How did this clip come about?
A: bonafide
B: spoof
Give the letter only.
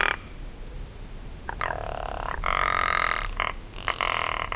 A